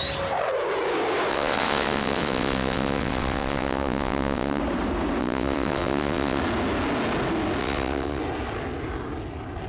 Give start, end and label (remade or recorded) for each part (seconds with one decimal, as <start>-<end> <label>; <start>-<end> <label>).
0.0-1.3 recorded; 1.3-4.6 remade; 4.6-5.2 recorded; 5.2-6.4 remade; 6.4-7.6 recorded; 7.6-8.2 remade; 8.2-9.7 recorded